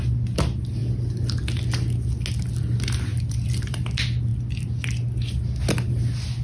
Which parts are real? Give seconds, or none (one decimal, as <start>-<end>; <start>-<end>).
0.0-3.1; 3.8-6.4